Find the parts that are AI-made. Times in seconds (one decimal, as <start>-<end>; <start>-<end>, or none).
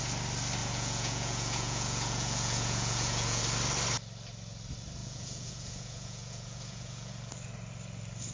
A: 0.6-3.4; 5.0-7.3